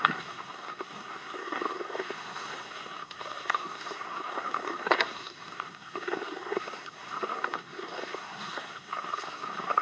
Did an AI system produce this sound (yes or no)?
yes